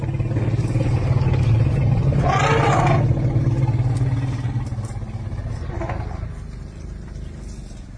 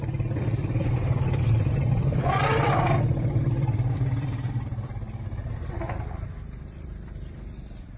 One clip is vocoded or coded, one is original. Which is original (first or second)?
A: first